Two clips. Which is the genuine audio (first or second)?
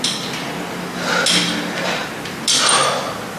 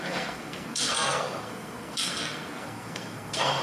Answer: first